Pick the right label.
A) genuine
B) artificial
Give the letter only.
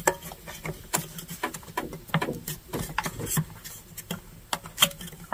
A